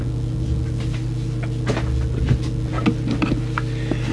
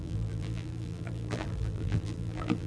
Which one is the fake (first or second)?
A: second